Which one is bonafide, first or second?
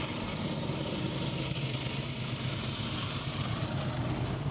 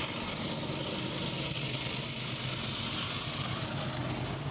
second